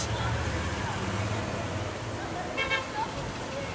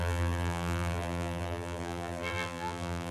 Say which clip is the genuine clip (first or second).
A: first